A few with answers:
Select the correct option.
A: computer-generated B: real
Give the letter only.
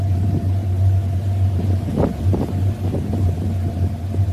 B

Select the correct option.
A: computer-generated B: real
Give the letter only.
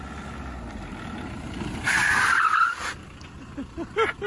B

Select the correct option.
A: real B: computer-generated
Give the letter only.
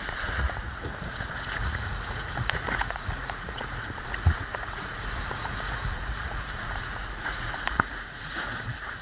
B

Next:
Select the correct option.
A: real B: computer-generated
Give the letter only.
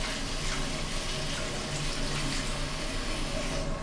A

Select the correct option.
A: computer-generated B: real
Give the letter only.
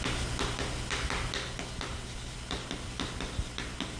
B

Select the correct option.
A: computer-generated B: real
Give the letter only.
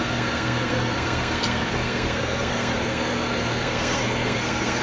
A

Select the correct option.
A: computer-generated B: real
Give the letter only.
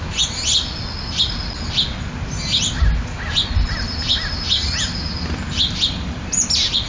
B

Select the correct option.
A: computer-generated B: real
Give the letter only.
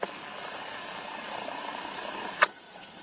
A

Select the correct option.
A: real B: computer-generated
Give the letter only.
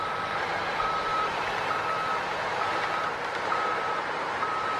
B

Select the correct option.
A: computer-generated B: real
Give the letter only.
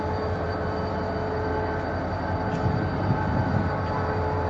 B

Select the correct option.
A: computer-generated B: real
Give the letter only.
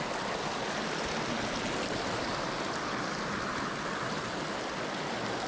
B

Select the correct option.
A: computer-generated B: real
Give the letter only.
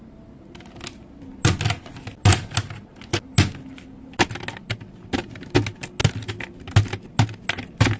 B